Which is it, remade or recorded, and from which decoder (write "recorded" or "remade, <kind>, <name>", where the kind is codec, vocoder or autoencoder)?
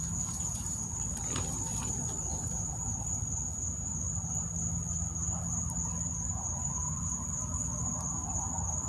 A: recorded